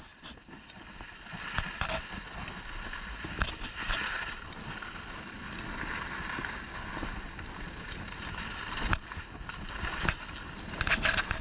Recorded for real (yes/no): yes